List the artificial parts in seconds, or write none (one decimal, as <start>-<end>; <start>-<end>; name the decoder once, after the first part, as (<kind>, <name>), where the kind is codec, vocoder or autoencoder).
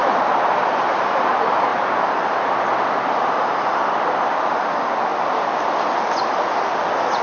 0.0-0.8 (vocoder, BigVGAN v2); 1.7-2.5